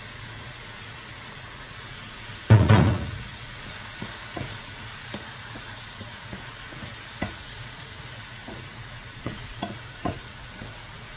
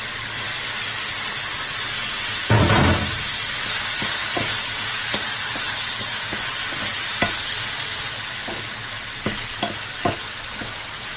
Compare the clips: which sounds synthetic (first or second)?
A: first